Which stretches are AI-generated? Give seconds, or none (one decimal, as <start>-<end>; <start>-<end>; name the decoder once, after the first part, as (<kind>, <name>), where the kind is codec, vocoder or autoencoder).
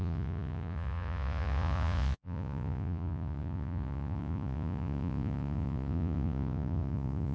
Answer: 0.0-7.3 (vocoder, Vocos)